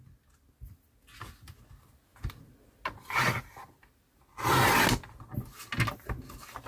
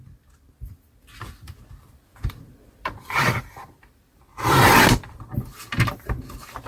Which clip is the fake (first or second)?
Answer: second